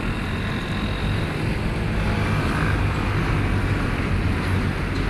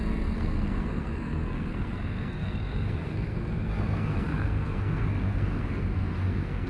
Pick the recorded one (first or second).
first